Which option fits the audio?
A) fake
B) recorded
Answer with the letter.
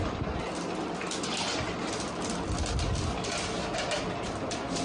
B